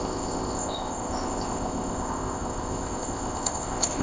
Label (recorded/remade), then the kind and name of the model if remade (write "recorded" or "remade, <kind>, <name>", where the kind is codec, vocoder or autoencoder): remade, codec, ZipCodec